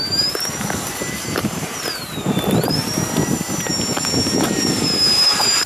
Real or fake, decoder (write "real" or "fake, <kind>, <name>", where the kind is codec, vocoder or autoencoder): fake, vocoder, BigVGAN v2